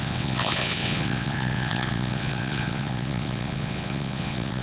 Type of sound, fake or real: fake